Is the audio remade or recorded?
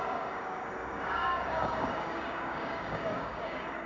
remade